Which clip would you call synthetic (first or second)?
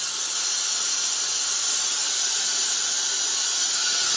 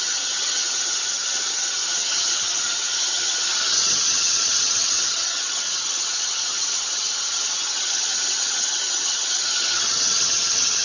second